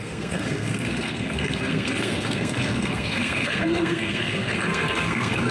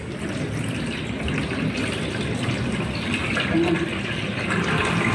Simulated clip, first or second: first